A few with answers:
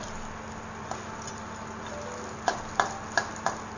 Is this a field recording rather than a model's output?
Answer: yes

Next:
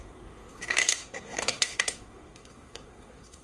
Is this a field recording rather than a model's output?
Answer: no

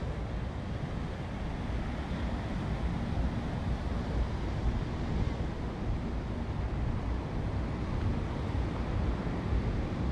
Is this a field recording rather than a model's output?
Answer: yes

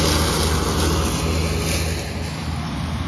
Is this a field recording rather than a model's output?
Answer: yes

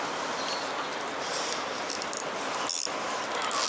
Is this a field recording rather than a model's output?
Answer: yes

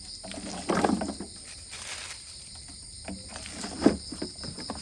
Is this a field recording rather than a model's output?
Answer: yes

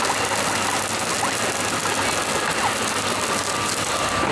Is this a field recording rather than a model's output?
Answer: yes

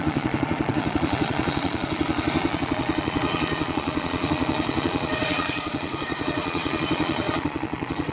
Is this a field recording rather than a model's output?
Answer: no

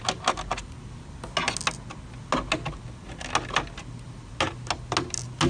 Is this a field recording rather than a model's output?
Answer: yes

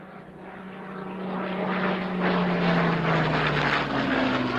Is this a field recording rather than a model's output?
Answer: yes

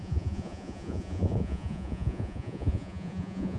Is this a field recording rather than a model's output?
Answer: no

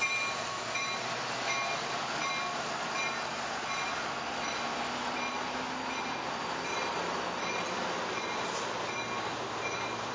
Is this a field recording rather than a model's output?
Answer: yes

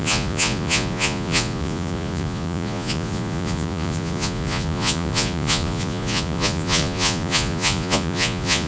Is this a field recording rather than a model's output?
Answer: no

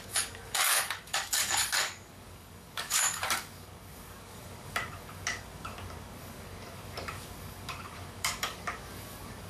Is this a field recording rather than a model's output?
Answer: no